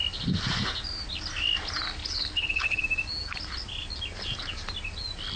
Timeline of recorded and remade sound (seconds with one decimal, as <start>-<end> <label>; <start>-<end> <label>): 0.0-2.0 recorded; 2.0-2.8 remade; 2.8-5.4 recorded